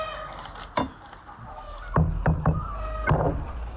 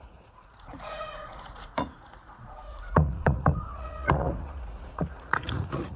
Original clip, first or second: first